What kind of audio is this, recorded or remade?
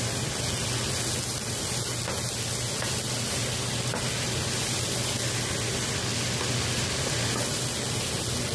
recorded